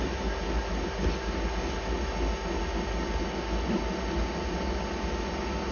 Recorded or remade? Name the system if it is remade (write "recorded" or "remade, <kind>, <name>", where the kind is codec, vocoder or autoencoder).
recorded